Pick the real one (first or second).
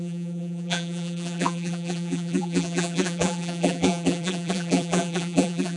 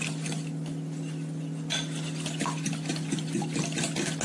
second